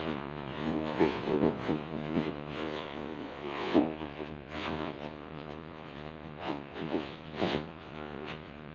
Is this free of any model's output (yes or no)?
no